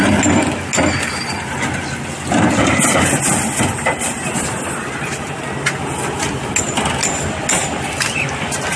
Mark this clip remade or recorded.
recorded